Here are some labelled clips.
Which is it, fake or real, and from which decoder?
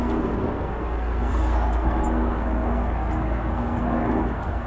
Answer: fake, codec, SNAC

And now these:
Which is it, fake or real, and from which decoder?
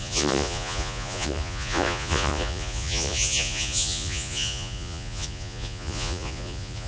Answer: fake, vocoder, Vocos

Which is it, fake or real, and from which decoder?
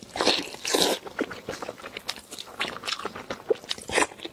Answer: real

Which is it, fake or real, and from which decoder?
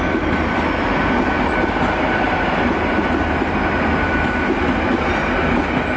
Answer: real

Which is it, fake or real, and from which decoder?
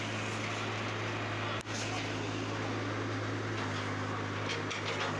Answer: real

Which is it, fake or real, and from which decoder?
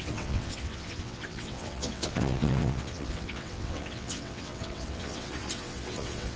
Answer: fake, vocoder, WaveNeXt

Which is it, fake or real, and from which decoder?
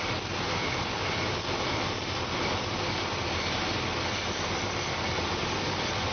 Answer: real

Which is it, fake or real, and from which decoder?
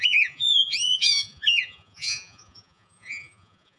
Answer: fake, vocoder, Vocos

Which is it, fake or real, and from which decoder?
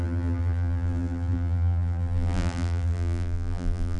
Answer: fake, vocoder, BigVGAN v2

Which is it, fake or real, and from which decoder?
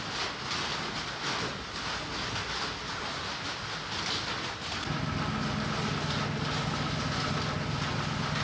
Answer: real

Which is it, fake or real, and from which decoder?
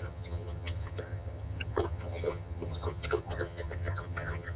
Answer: fake, vocoder, HiFi-GAN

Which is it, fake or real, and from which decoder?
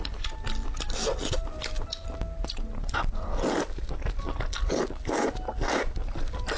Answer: real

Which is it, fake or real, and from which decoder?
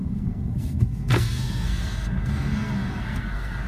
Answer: fake, codec, SNAC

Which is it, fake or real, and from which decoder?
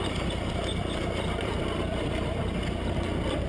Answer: real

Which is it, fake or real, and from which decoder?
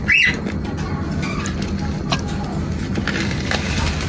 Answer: real